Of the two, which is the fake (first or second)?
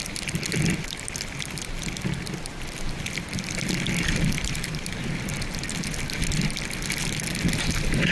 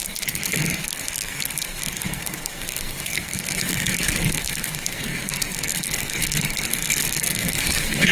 second